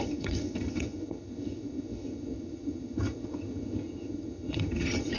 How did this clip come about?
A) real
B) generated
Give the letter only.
B